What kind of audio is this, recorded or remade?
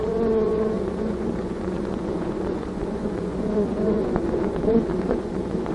remade